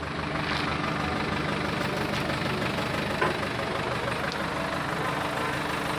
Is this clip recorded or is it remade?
recorded